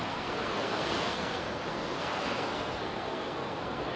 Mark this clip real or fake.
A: fake